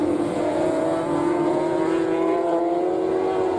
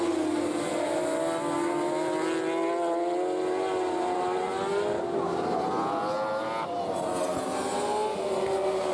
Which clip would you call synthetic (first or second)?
first